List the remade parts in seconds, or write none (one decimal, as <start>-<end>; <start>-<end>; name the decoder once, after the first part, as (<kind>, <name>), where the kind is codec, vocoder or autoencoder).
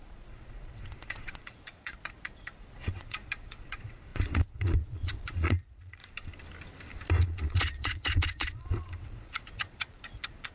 0.0-6.0 (vocoder, Vocos); 7.2-10.5